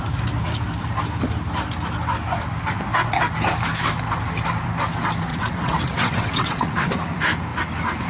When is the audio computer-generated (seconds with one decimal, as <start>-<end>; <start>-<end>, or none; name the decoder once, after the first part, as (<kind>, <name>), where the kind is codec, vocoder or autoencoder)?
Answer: 5.3-6.9 (vocoder, WaveNeXt)